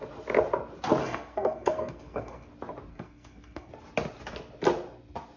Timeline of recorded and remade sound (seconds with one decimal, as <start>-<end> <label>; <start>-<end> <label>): 0.0-1.0 recorded; 1.0-2.5 remade; 2.5-2.9 recorded; 2.9-3.7 remade; 3.7-5.4 recorded